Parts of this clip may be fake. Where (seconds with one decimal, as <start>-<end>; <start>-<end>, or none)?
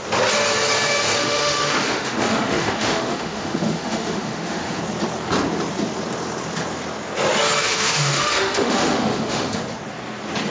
1.2-4.8; 7.6-9.6